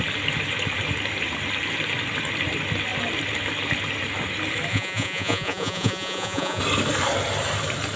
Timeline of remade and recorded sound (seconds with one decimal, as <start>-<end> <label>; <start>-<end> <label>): 0.0-4.7 recorded; 4.7-6.6 remade; 6.6-8.0 recorded